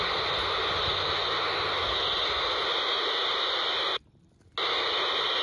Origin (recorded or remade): recorded